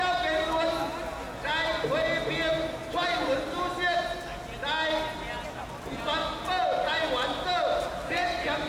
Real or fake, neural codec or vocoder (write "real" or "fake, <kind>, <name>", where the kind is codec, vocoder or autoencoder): real